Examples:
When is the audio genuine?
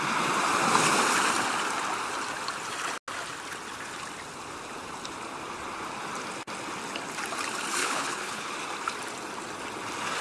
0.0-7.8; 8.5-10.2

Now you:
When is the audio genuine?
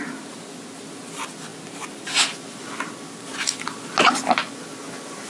0.0-5.3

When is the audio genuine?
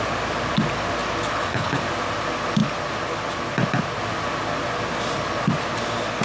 0.0-1.3; 1.8-6.2